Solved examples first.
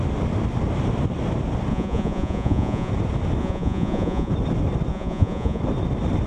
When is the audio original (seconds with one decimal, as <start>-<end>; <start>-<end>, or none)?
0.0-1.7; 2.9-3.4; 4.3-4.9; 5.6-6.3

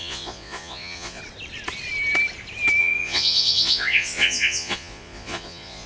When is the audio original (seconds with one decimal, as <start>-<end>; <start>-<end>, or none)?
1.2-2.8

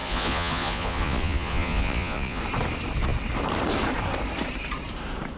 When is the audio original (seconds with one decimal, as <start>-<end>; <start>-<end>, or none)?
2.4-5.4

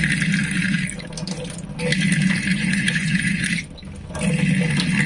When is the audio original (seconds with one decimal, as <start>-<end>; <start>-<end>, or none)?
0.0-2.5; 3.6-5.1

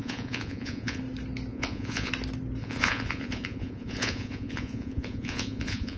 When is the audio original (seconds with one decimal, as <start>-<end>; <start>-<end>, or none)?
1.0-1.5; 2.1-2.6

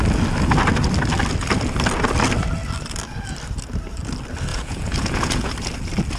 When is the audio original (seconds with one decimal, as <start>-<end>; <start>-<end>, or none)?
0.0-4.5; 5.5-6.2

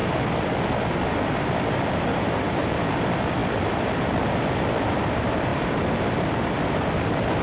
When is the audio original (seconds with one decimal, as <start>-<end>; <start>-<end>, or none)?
0.0-7.4